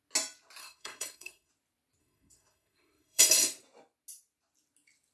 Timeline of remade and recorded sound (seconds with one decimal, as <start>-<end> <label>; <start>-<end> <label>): 0.0-0.6 recorded; 0.6-1.5 remade; 1.5-2.0 recorded; 2.0-3.2 remade; 3.2-5.1 recorded